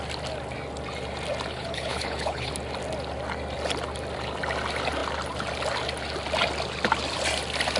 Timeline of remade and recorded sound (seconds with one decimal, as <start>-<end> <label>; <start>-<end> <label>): 0.0-1.5 recorded; 1.5-2.5 remade; 2.5-7.8 recorded